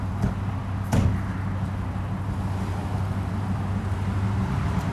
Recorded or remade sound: recorded